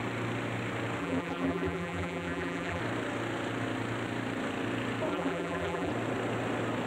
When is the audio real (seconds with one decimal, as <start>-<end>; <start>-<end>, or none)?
0.0-1.0; 2.8-5.1; 5.9-6.9